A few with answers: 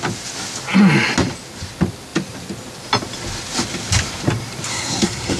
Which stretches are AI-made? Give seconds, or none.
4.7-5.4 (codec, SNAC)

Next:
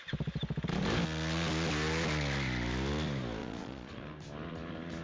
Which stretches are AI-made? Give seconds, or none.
3.4-4.0 (vocoder, Vocos)

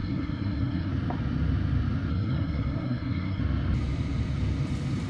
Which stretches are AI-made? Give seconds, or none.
0.0-0.9 (codec, SNAC); 2.1-3.4

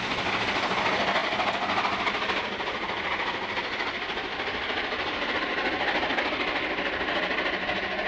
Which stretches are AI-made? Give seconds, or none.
none

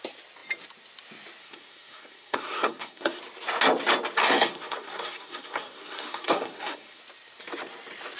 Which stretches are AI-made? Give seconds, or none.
1.4-3.2 (codec, SNAC); 4.2-7.0

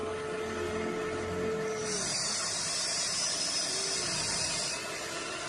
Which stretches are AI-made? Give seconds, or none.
none